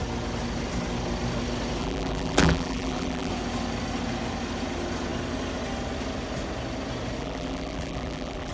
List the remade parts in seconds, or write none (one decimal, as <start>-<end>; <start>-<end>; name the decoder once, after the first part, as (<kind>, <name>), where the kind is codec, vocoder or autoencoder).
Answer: 1.8-3.3 (vocoder, BigVGAN v2); 7.2-8.5